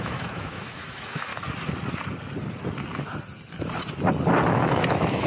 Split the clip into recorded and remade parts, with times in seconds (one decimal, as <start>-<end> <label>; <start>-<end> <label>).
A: 0.0-1.3 remade; 1.3-4.5 recorded; 4.5-5.3 remade